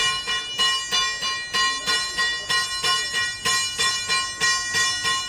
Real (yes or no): yes